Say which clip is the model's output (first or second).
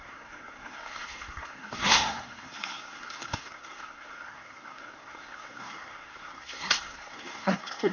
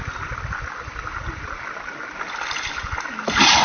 first